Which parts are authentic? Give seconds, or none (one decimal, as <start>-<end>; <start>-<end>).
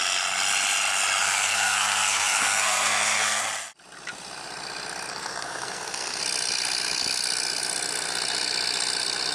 0.0-1.2; 3.4-5.1; 6.2-9.3